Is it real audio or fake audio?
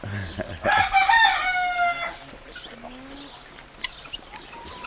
real